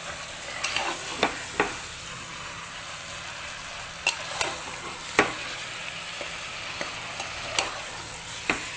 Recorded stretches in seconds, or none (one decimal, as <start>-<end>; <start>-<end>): 0.0-8.8